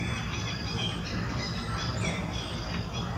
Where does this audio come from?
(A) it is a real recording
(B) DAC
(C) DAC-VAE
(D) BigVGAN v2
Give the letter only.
A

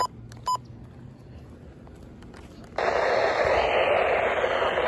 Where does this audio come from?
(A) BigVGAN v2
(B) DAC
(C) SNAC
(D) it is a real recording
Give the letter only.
D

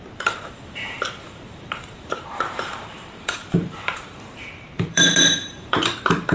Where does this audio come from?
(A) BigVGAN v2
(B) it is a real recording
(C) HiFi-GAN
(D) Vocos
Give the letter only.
A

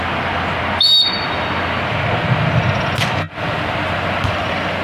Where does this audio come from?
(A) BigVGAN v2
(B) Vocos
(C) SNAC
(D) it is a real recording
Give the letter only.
D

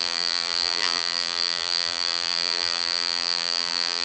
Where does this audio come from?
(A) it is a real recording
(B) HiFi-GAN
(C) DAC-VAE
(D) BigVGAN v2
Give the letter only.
D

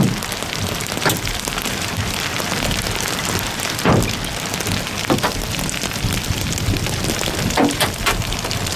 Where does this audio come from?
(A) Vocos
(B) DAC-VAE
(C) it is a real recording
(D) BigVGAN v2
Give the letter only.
D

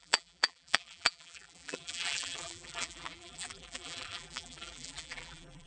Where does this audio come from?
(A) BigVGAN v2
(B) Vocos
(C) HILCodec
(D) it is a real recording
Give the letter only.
A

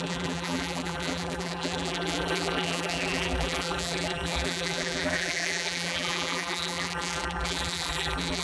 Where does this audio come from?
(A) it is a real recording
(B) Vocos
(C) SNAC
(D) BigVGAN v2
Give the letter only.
D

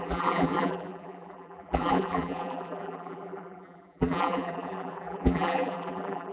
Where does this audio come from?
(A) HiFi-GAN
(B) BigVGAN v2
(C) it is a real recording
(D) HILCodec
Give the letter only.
B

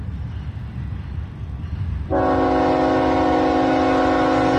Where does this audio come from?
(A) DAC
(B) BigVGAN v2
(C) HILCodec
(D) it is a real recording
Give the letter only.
D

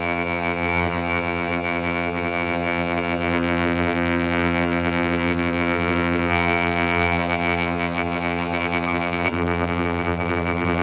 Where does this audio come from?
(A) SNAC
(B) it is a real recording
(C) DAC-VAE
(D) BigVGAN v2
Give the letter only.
D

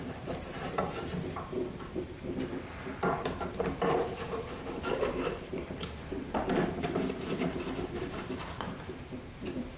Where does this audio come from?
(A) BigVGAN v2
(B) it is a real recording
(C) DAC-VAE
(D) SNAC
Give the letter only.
A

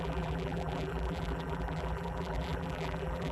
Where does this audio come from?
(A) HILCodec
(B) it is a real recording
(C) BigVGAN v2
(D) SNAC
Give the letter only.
C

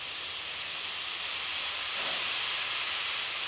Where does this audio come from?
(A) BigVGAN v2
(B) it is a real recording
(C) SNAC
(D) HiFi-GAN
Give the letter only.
B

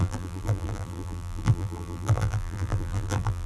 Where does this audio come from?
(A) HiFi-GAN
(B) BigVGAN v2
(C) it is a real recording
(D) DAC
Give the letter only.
B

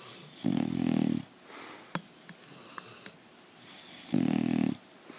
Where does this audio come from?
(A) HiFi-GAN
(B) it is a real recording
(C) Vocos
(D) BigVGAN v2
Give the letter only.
B